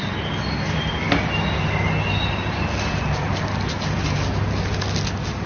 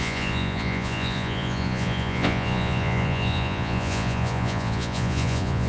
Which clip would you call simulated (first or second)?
second